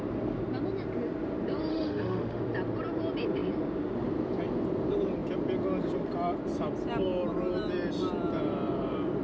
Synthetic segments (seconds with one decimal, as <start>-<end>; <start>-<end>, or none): 1.7-2.4

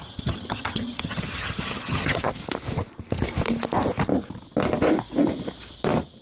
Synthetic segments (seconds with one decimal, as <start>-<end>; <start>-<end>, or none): 0.0-2.4

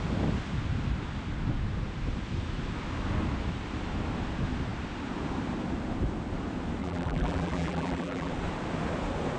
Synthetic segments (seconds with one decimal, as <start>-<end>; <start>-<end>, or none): 6.8-8.3

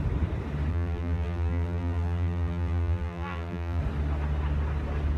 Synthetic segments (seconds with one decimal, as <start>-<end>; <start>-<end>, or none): 0.7-3.8

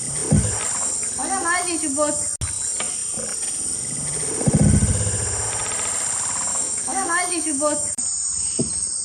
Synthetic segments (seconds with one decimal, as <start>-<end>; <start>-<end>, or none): 6.5-8.0

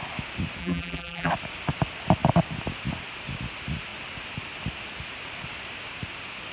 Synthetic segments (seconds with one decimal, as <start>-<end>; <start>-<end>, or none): 0.6-1.3

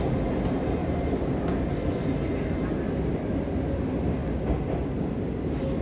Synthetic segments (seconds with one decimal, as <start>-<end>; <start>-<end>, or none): 0.8-1.4